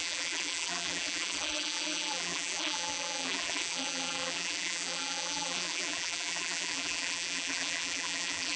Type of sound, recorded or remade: remade